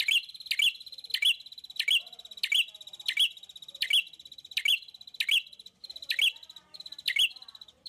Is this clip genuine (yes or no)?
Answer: yes